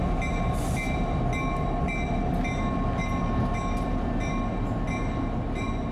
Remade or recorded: recorded